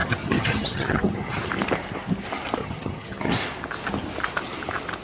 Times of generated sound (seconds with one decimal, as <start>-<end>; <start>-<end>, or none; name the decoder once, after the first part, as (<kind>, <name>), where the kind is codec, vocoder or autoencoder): 0.0-1.5 (vocoder, HiFi-GAN); 2.6-3.3